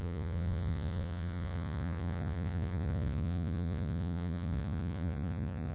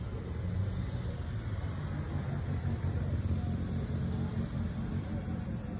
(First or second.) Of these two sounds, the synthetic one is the first